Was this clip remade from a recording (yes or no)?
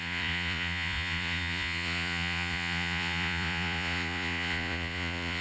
yes